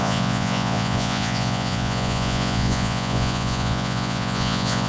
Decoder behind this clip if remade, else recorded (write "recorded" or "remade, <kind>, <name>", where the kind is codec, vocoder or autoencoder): remade, vocoder, Vocos